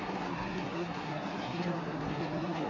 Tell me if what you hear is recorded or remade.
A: remade